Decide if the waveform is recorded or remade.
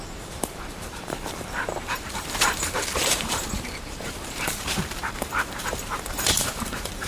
remade